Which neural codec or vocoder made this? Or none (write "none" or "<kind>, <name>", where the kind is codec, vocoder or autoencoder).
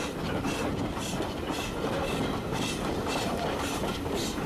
none